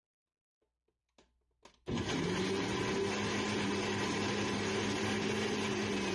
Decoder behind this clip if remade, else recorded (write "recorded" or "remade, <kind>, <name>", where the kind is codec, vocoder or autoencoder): recorded